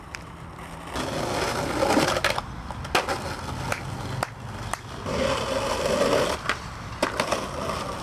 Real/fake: real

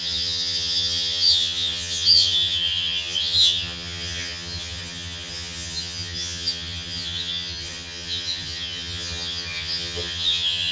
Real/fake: fake